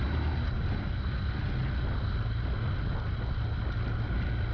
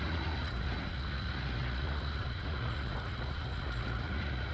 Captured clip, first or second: first